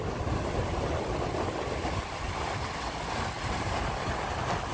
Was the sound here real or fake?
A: real